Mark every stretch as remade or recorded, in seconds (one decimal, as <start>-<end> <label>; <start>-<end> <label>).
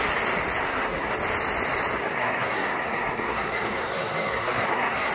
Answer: 0.0-0.6 recorded; 0.6-1.1 remade; 1.1-2.0 recorded; 2.0-5.1 remade